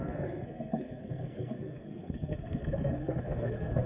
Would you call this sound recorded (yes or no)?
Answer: no